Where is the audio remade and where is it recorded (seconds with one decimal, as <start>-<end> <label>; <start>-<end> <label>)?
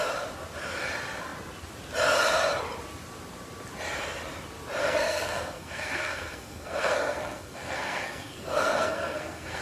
0.0-4.8 recorded; 4.8-9.6 remade